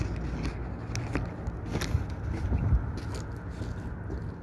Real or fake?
real